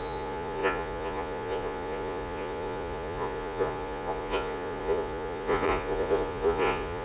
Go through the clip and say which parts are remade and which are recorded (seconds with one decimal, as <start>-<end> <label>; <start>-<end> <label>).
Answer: 0.0-7.0 remade